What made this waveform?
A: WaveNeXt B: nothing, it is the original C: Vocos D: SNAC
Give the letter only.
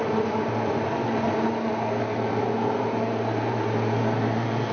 B